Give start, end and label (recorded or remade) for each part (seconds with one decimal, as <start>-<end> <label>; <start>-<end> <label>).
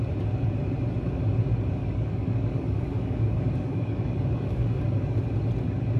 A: 0.0-1.8 recorded; 1.8-5.2 remade; 5.2-6.0 recorded